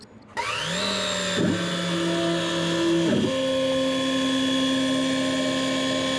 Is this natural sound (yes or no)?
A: yes